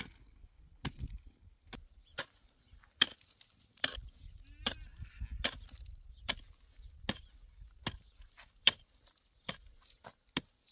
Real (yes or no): yes